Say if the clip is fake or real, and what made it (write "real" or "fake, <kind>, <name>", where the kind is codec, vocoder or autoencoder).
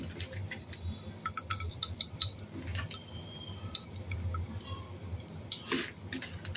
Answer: real